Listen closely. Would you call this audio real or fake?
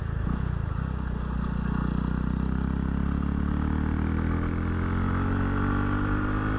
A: real